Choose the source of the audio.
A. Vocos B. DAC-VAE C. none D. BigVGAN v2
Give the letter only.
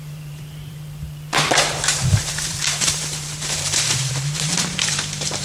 D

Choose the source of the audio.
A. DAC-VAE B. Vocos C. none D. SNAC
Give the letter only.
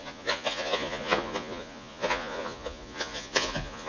B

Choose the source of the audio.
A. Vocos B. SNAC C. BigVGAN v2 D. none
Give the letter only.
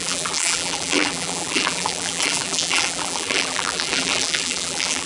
C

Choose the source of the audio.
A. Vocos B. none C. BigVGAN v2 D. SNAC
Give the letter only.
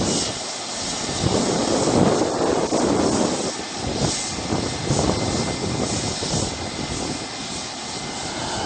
B